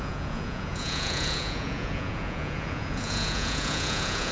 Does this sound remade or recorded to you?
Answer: remade